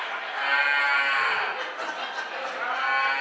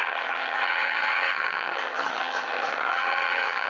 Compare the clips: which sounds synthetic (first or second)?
second